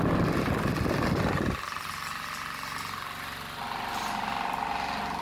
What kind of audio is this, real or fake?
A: real